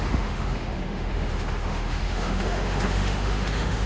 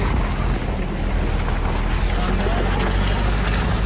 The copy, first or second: first